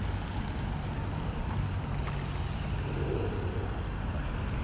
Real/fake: real